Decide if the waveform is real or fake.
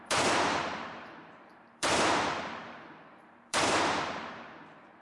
fake